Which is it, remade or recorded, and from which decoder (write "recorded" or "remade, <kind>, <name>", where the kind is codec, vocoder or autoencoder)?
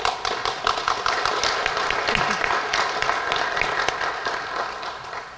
recorded